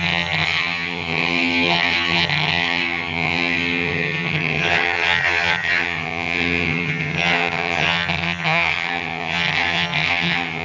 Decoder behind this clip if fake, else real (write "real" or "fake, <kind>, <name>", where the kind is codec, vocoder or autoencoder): fake, vocoder, HiFi-GAN